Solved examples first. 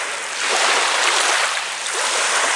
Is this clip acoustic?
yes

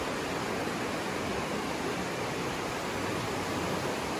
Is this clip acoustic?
yes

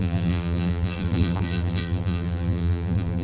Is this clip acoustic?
no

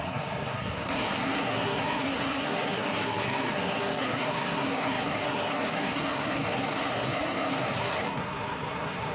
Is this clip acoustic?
no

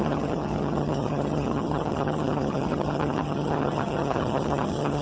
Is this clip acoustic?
no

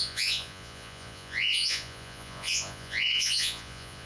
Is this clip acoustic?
no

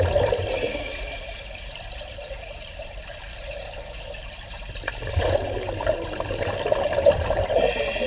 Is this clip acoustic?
yes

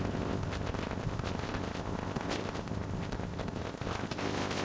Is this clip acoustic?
no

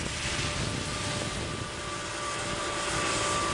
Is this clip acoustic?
yes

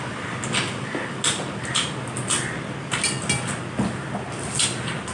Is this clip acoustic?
yes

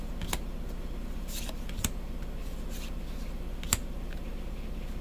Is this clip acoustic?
yes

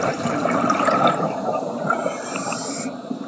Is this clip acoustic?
no